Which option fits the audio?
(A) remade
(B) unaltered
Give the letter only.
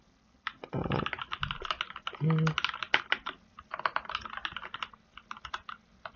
B